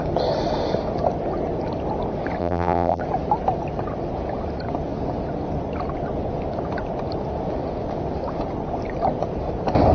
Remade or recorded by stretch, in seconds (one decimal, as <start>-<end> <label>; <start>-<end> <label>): 0.0-2.4 recorded; 2.4-3.0 remade; 3.0-9.9 recorded